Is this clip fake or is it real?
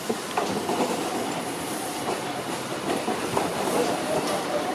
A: fake